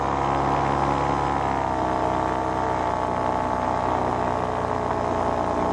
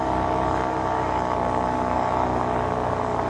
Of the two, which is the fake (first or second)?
second